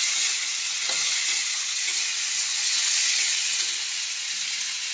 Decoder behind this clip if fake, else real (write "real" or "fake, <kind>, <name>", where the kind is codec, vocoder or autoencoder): fake, vocoder, WaveNeXt